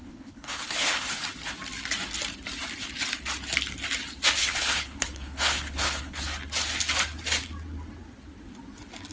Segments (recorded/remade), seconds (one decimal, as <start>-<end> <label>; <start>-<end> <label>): 0.0-1.2 remade; 1.2-4.4 recorded; 4.4-6.2 remade; 6.2-9.1 recorded